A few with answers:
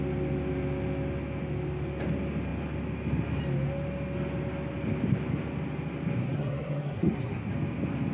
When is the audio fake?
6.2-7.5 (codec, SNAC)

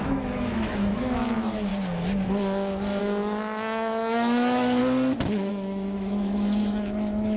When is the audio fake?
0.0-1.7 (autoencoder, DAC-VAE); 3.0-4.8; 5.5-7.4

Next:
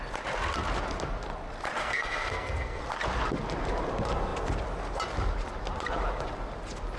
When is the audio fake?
1.8-2.8 (codec, SNAC)